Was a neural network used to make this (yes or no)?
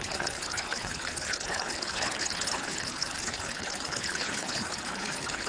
yes